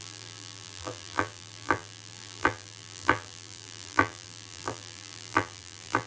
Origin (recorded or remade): remade